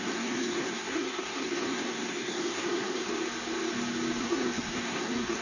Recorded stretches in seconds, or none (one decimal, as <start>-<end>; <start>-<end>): 3.1-4.2